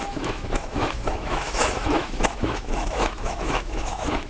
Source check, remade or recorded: remade